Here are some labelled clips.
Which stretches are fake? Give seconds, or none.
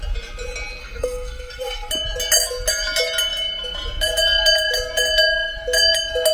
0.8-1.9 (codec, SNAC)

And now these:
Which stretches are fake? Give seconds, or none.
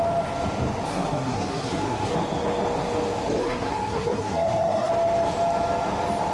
0.9-2.1 (codec, SNAC); 3.4-4.9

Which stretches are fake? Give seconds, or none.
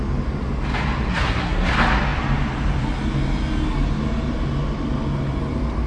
1.1-1.7 (codec, SNAC)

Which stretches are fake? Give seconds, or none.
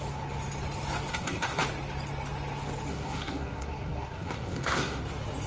1.1-1.6 (codec, SNAC); 2.9-5.0